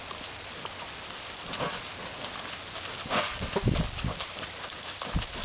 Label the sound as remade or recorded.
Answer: recorded